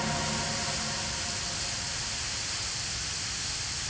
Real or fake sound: real